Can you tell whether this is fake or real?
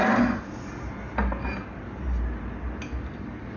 real